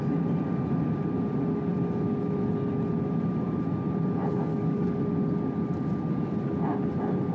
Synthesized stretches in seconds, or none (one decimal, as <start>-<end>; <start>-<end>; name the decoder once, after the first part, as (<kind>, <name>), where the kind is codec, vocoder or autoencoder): 4.5-5.0 (codec, DAC)